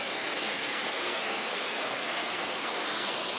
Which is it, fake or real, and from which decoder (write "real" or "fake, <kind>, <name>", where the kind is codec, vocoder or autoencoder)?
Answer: fake, codec, SNAC